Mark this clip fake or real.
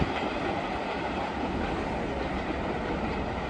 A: real